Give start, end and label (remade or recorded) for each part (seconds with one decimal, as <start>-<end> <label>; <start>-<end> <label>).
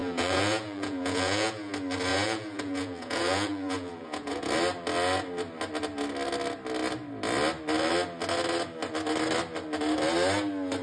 0.0-1.7 remade; 1.7-2.1 recorded; 2.1-4.5 remade; 4.5-10.8 recorded